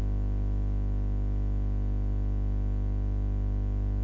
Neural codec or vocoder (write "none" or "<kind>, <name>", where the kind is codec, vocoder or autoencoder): none